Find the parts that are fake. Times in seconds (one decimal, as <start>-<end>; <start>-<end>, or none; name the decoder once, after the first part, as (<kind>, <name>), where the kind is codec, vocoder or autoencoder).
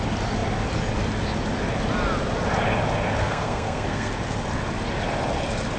3.2-4.1 (codec, SNAC)